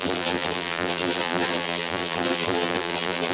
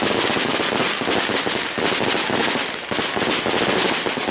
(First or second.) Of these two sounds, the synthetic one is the first